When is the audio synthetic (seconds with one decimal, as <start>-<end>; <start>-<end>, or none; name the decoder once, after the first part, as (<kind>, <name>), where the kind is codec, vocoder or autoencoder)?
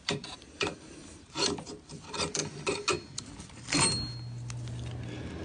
0.0-2.4 (vocoder, BigVGAN v2)